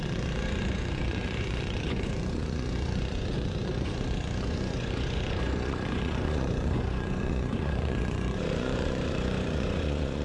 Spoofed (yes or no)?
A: yes